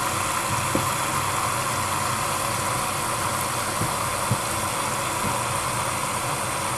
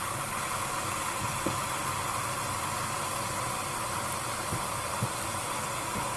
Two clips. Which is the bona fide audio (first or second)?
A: first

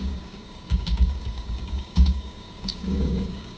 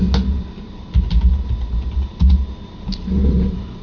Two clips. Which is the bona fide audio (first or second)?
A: second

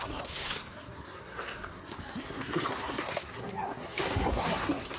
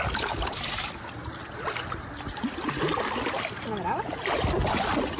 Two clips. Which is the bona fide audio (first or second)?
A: second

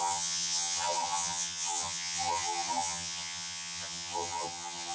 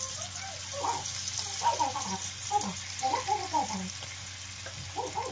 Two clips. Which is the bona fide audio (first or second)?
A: second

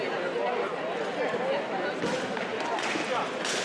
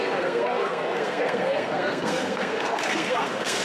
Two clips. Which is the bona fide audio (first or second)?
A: first